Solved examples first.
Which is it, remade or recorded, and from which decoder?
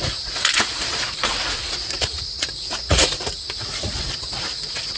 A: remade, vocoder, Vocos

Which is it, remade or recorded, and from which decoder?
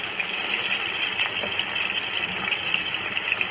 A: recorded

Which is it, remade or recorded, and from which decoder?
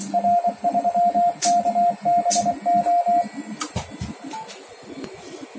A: recorded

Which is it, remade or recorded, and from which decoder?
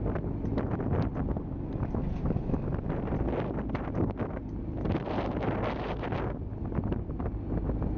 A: recorded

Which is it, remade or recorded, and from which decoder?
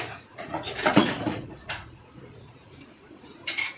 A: remade, vocoder, Vocos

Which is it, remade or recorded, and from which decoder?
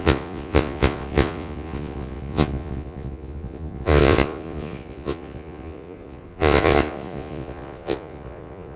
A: remade, vocoder, Vocos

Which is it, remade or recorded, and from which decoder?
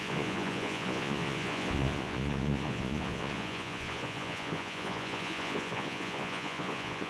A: remade, vocoder, Vocos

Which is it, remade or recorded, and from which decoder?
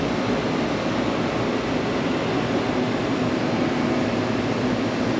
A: recorded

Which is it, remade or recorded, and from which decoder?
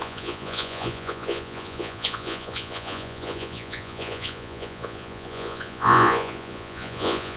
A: remade, vocoder, Vocos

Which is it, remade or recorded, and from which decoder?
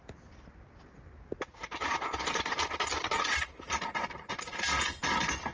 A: recorded